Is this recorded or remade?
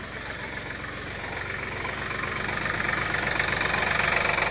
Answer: recorded